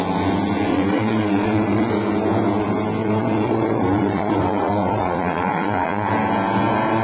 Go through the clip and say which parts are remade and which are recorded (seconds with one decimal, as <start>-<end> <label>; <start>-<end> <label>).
0.0-0.7 recorded; 0.7-1.9 remade; 1.9-3.0 recorded; 3.0-6.1 remade; 6.1-7.0 recorded